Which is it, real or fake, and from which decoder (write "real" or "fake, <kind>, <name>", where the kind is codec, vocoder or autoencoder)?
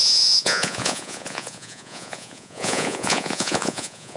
fake, vocoder, Vocos